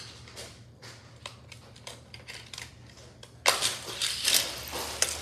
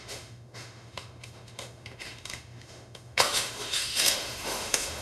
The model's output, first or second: second